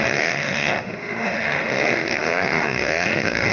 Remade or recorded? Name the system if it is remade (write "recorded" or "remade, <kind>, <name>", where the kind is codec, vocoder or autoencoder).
remade, autoencoder, DAC-VAE